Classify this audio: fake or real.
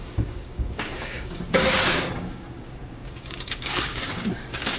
fake